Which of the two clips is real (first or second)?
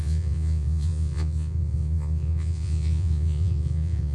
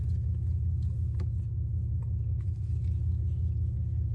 second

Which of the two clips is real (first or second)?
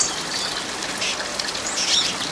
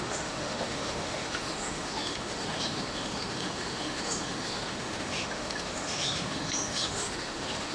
first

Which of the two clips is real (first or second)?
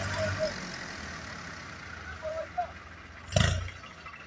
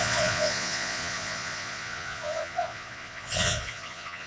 first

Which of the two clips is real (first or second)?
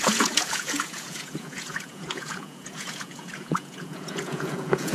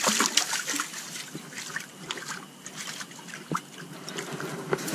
second